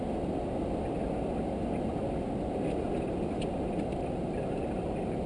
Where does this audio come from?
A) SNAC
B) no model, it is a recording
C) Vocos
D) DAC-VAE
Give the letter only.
B